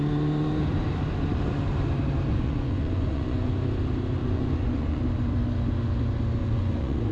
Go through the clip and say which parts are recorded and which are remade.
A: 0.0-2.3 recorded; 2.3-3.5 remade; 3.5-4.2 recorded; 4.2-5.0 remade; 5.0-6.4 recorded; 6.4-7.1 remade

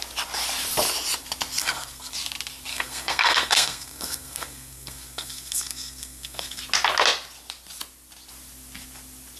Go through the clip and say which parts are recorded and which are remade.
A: 0.0-1.6 recorded; 1.6-2.1 remade; 2.1-2.7 recorded; 2.7-6.6 remade; 6.6-9.4 recorded

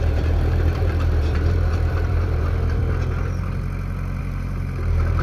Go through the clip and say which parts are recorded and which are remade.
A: 0.0-2.8 remade; 2.8-4.2 recorded; 4.2-5.2 remade

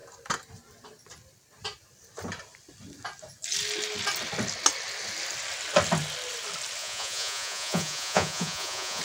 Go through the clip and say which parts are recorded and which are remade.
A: 0.0-6.8 recorded; 6.8-9.0 remade

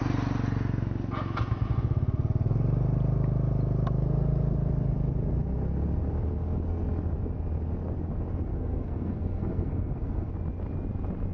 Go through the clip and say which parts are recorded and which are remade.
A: 0.0-8.5 recorded; 8.5-10.3 remade; 10.3-11.3 recorded